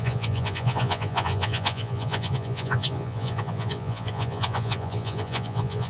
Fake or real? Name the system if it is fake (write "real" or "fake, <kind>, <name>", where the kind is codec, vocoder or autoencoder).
fake, vocoder, Vocos